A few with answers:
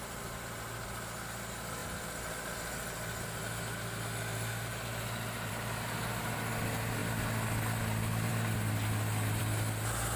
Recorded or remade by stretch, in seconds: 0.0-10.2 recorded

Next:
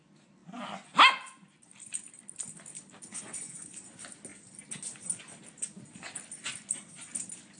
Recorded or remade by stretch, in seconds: 0.0-3.1 recorded; 3.1-3.9 remade; 3.9-7.6 recorded

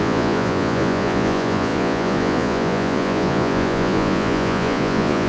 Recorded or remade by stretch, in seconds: 0.0-5.3 remade